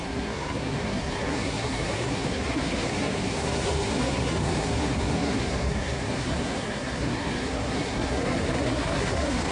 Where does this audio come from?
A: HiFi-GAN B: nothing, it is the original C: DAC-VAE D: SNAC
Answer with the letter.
D